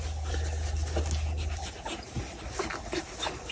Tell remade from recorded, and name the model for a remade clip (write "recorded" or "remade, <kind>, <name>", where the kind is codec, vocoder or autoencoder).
recorded